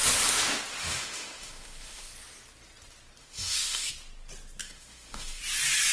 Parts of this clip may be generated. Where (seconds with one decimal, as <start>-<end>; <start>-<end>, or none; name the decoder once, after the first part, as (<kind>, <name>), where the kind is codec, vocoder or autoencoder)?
0.8-2.1 (autoencoder, DAC-VAE); 3.2-3.9; 4.6-5.4